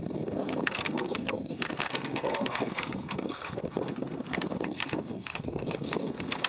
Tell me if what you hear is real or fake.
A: fake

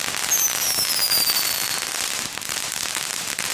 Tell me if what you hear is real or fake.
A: real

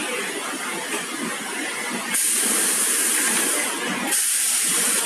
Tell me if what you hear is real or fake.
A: real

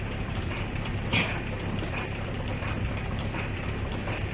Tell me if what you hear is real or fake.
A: fake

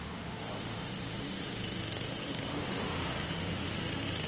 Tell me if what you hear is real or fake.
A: fake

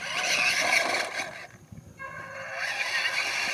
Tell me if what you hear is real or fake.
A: real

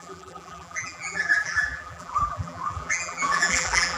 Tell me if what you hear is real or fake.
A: fake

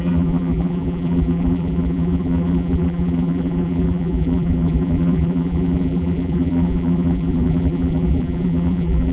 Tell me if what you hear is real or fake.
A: fake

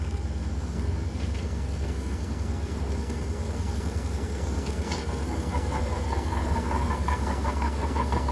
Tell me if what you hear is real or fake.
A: fake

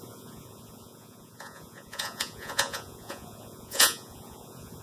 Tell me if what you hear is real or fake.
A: fake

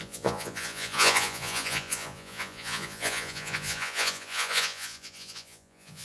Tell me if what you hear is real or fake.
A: fake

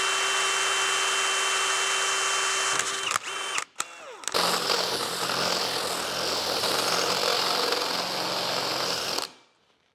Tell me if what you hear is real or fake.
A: real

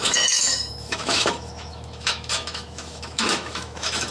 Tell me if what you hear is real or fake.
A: fake